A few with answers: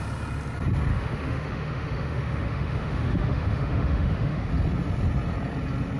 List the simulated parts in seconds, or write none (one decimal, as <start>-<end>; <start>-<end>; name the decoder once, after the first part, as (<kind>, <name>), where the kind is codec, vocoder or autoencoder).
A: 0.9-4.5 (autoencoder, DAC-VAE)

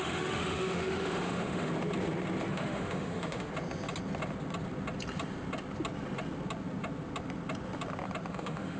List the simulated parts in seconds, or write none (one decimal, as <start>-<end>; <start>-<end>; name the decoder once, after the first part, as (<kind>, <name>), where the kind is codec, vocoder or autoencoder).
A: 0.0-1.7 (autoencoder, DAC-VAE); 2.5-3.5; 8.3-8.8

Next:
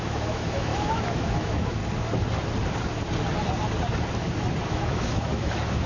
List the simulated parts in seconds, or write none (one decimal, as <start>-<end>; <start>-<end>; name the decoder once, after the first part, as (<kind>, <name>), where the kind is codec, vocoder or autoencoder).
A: 0.0-1.8 (autoencoder, DAC-VAE); 4.7-5.9